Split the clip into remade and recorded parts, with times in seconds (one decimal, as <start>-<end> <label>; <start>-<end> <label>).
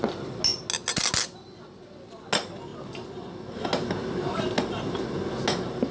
0.0-5.9 recorded